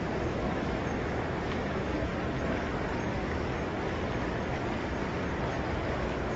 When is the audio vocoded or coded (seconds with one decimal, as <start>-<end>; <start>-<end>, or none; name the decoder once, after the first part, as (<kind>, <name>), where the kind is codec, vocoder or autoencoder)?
0.0-2.1 (autoencoder, DAC-VAE); 5.9-6.4